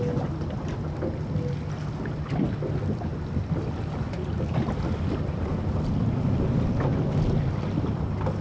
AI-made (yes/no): no